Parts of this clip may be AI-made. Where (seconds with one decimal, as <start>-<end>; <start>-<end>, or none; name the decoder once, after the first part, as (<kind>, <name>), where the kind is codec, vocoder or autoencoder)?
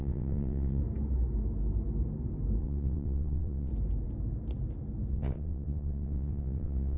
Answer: 0.0-0.8 (vocoder, WaveNeXt); 2.6-3.7; 5.1-7.0